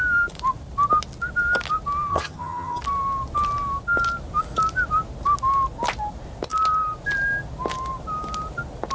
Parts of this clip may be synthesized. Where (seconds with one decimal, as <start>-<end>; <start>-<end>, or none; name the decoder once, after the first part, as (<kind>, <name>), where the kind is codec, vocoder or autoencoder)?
2.1-2.8 (vocoder, HiFi-GAN)